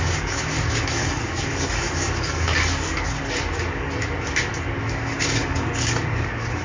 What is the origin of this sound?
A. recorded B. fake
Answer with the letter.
B